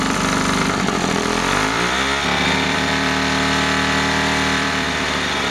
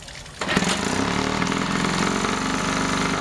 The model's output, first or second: first